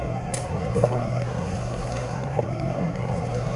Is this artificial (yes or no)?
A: yes